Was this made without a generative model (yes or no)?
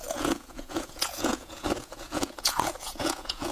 no